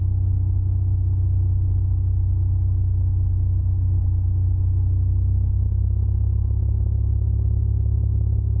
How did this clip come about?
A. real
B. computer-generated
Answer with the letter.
A